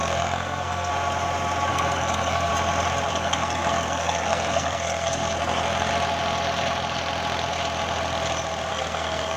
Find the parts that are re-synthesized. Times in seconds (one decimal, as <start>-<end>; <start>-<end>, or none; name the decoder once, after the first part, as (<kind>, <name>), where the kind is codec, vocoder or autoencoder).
0.0-0.9 (codec, SNAC); 1.7-2.5; 3.1-5.9; 8.7-9.4